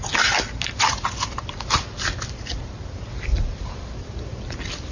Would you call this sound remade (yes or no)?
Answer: no